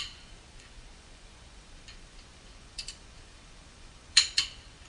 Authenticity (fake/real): fake